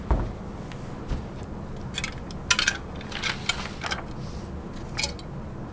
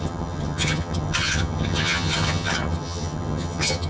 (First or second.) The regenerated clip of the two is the second